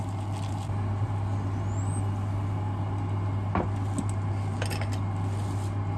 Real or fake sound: real